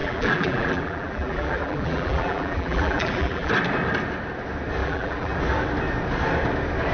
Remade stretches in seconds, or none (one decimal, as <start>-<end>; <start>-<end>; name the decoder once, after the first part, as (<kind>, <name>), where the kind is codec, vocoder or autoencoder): 0.0-3.5 (vocoder, BigVGAN v2); 4.8-5.4

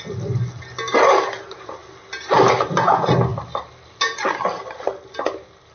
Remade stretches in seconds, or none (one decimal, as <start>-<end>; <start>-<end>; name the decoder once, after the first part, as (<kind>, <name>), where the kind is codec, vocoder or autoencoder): none

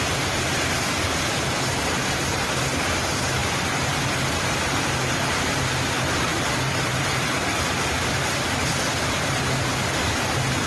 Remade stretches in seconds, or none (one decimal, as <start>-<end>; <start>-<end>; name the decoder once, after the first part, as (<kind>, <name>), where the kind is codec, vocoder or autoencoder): 6.3-8.5 (vocoder, BigVGAN v2)